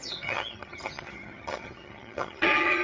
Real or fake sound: fake